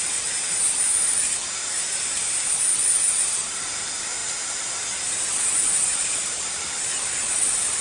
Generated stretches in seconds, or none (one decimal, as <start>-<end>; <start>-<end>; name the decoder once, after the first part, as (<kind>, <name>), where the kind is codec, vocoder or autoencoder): none